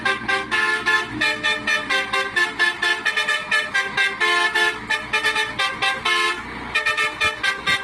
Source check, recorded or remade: recorded